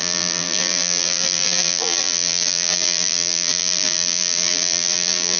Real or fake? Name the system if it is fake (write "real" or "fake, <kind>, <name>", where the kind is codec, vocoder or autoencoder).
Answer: fake, vocoder, BigVGAN v2